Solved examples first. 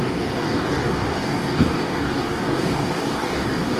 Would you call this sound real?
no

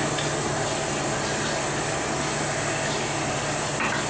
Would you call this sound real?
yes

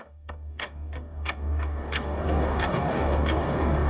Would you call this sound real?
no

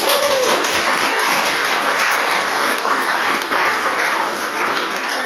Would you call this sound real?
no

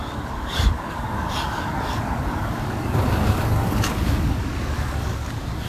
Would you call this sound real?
no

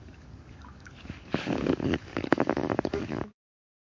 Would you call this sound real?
no